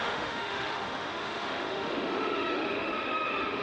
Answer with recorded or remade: remade